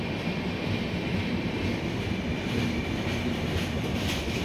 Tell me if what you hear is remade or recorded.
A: remade